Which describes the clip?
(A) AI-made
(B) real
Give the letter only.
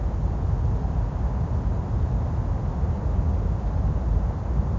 B